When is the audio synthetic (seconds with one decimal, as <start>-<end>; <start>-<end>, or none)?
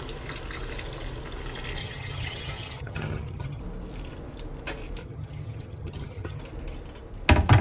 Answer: 1.8-3.6; 5.0-6.4